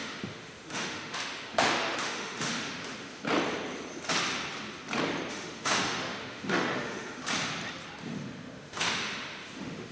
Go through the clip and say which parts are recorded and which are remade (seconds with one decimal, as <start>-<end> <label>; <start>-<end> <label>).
0.0-3.2 remade; 3.2-5.3 recorded; 5.3-7.2 remade; 7.2-8.0 recorded; 8.0-9.9 remade

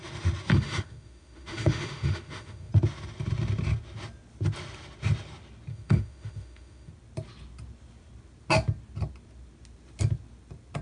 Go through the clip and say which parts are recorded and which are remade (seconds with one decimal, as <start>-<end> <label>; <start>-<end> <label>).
0.0-0.5 recorded; 0.5-2.7 remade; 2.7-5.7 recorded; 5.7-6.9 remade; 6.9-10.8 recorded

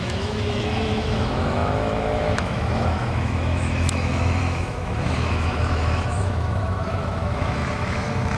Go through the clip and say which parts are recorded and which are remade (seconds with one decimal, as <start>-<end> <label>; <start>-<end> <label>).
0.0-8.4 remade

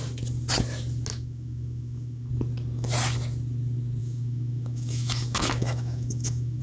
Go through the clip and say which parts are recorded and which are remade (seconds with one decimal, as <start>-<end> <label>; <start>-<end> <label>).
0.0-1.1 recorded; 1.1-2.3 remade; 2.3-4.0 recorded; 4.0-6.6 remade

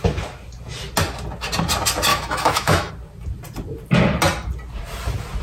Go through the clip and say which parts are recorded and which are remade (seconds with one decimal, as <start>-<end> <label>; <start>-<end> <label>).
0.0-2.1 recorded; 2.1-2.9 remade; 2.9-5.4 recorded

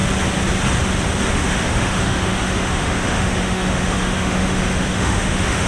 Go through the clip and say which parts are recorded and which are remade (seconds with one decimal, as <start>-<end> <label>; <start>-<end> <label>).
0.0-1.3 recorded; 1.3-5.7 remade

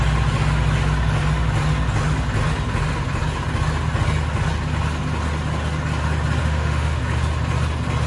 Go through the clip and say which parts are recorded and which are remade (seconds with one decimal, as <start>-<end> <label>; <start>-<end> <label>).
0.0-6.4 recorded; 6.4-7.0 remade; 7.0-8.1 recorded